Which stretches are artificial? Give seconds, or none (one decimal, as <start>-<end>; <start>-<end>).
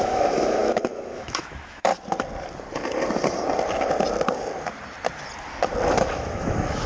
0.0-1.9; 6.0-6.9